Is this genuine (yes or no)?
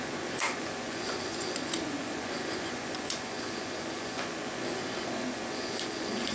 no